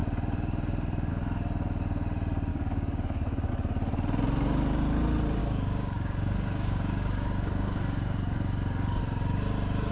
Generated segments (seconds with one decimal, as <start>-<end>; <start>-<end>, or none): 2.5-3.5; 5.4-9.0

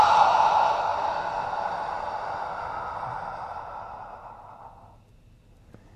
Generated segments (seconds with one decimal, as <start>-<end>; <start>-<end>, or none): 0.9-4.5

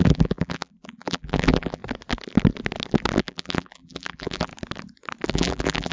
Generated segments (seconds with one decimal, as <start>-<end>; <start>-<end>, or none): 0.0-1.8; 3.2-4.5; 5.3-5.9

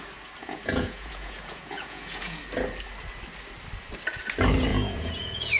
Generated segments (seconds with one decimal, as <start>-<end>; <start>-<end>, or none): 0.4-2.4; 4.7-5.6

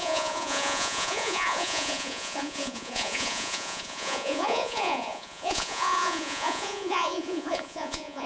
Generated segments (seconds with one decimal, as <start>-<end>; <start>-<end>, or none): 0.0-8.3

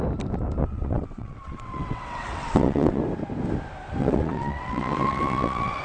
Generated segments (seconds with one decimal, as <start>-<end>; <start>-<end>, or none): 0.6-3.0; 4.0-5.8

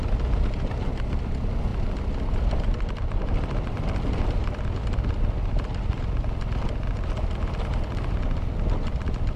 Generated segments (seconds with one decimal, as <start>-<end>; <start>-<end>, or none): none

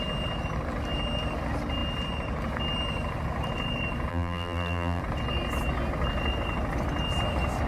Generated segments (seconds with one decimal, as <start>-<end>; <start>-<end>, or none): 4.1-5.0